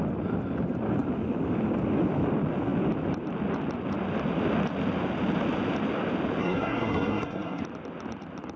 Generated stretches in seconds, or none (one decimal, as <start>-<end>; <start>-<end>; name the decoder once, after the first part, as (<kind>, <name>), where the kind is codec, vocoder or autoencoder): 6.4-7.6 (codec, SNAC)